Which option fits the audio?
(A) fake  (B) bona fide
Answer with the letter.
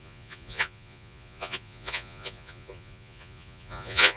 A